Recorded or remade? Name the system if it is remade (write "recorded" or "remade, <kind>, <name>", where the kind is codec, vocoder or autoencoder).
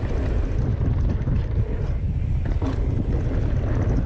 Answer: recorded